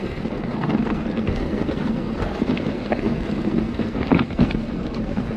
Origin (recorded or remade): remade